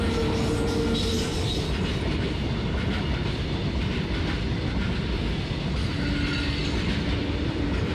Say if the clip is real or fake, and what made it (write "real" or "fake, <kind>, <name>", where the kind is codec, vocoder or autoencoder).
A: real